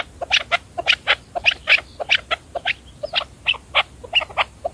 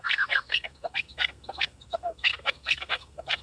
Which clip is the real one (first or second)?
first